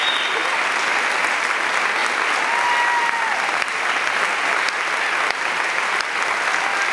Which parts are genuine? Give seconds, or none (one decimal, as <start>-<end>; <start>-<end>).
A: 0.0-6.9